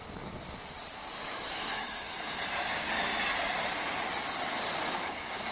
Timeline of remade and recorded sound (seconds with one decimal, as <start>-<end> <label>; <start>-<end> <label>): 0.0-1.2 recorded; 1.2-2.4 remade; 2.4-5.5 recorded